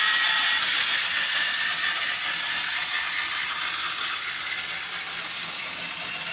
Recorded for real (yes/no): yes